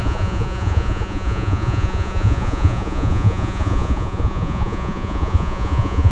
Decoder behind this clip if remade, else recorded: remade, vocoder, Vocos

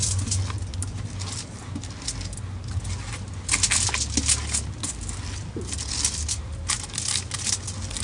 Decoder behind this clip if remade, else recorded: recorded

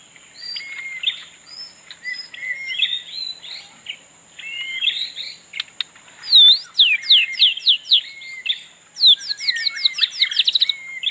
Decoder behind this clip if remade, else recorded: recorded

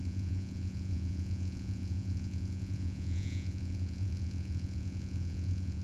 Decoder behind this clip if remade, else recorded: remade, vocoder, Vocos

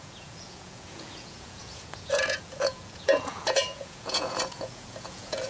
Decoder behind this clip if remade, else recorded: remade, vocoder, Vocos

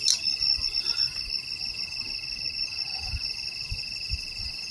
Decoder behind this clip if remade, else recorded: recorded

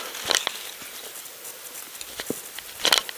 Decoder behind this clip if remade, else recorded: recorded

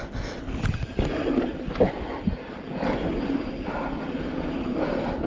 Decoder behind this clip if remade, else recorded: recorded